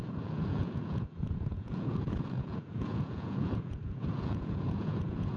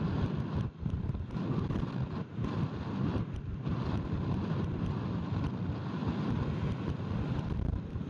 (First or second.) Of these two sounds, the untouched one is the second